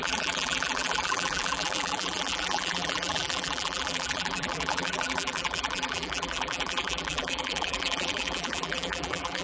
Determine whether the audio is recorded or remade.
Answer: remade